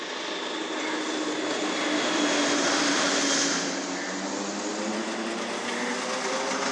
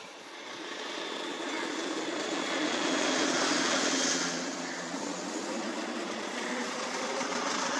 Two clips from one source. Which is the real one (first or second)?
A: first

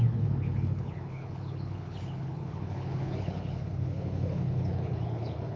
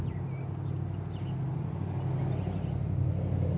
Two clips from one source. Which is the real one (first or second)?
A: second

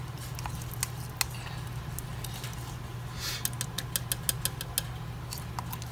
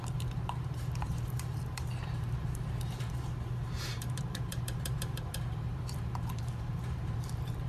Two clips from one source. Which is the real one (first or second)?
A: first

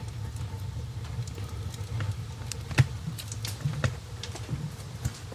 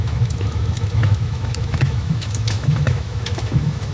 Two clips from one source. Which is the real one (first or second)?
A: first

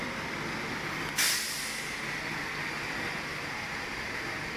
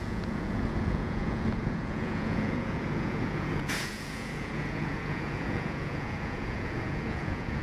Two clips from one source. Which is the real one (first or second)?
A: first